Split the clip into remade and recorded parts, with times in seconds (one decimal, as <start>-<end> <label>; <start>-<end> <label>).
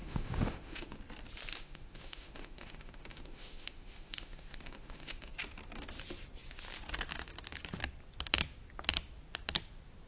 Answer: 0.0-1.0 remade; 1.0-1.5 recorded; 1.5-5.3 remade; 5.3-10.1 recorded